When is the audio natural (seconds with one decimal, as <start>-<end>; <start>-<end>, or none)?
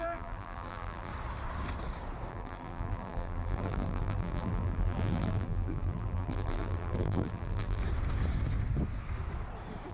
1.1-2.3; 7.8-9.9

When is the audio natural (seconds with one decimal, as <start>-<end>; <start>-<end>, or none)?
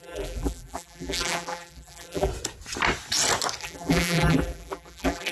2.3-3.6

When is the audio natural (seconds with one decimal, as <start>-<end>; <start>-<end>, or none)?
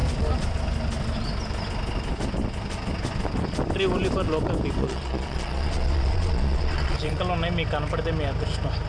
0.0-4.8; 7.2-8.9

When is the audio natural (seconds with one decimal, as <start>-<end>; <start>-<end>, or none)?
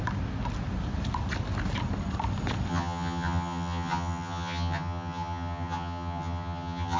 0.0-2.7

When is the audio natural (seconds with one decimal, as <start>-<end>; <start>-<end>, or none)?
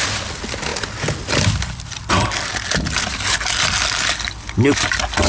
0.0-5.3